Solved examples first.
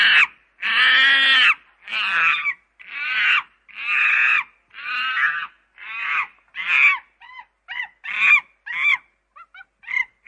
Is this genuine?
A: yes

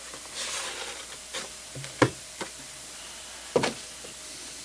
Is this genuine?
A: yes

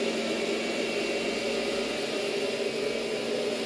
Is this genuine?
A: yes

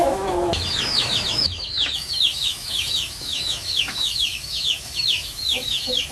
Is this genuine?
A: no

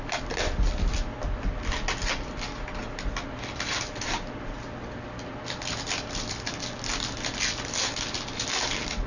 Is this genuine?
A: yes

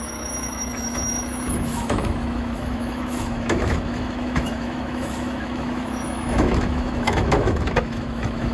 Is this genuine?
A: no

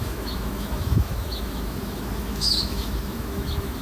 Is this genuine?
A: no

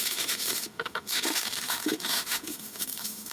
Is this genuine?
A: no